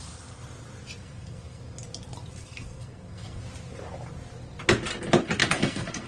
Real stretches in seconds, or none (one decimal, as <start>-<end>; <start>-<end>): 0.0-1.0; 1.6-2.4; 3.4-5.4